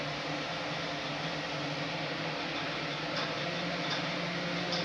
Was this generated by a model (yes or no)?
yes